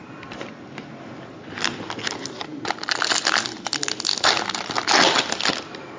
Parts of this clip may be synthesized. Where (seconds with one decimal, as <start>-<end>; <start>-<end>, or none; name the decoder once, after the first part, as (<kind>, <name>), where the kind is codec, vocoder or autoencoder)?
none